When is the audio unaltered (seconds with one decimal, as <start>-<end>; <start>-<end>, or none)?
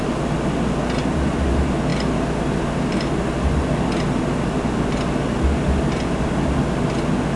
0.0-7.4